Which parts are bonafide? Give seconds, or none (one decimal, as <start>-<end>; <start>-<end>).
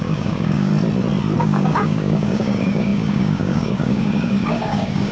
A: 0.7-1.4